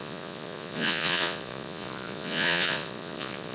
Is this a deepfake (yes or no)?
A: yes